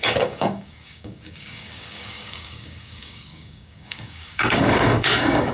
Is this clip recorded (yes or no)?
no